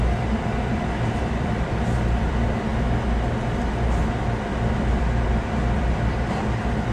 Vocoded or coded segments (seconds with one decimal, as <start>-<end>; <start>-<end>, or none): 0.0-2.7; 4.0-6.9